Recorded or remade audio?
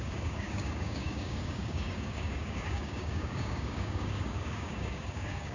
remade